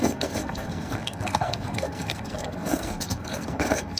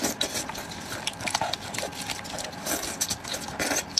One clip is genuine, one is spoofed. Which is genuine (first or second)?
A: second